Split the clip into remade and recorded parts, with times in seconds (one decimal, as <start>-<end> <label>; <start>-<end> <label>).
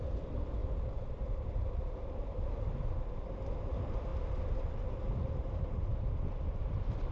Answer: 0.0-5.9 remade; 5.9-6.6 recorded; 6.6-7.1 remade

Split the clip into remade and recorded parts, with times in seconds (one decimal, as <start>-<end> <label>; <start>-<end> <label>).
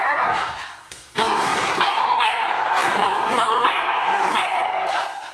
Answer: 0.0-5.3 remade